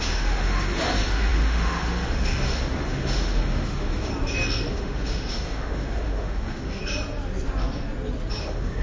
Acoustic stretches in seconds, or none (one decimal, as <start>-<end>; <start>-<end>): 4.1-4.7; 6.8-8.4